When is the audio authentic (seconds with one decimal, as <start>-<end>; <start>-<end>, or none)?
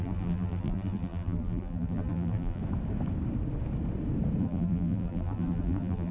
2.6-4.4